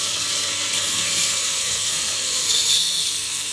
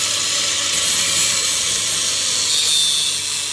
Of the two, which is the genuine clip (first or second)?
second